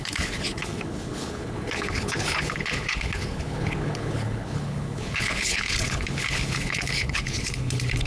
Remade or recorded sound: remade